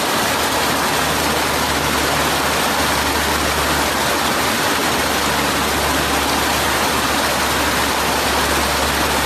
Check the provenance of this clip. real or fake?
real